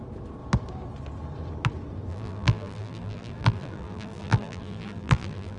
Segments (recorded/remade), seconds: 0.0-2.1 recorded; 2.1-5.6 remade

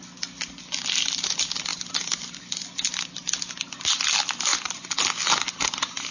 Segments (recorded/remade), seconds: 0.0-4.5 recorded; 4.5-6.1 remade

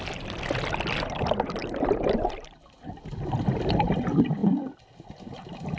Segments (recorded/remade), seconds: 0.0-1.6 recorded; 1.6-3.6 remade; 3.6-5.8 recorded

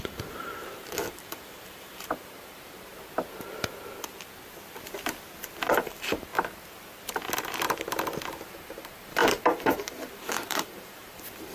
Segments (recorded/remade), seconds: 0.0-2.9 remade; 2.9-5.7 recorded; 5.7-6.3 remade; 6.3-8.5 recorded; 8.5-11.5 remade

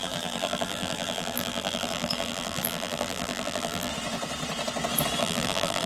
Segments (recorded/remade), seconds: 0.0-3.9 remade; 3.9-5.2 recorded; 5.2-5.9 remade